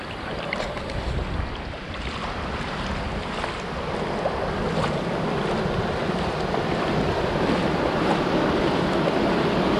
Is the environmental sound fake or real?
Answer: real